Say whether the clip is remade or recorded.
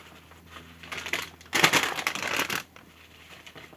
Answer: recorded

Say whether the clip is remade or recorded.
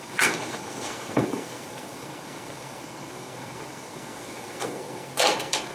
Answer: remade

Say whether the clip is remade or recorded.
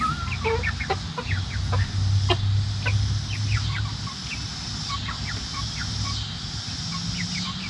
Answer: recorded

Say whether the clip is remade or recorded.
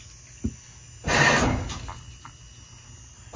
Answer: recorded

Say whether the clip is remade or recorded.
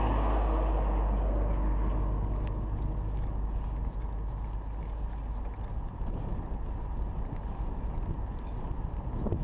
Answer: recorded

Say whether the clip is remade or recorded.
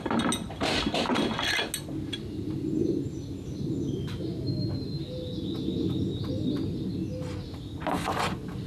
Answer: recorded